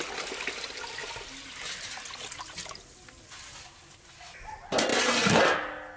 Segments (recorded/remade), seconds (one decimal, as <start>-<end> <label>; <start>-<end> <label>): 0.0-6.0 recorded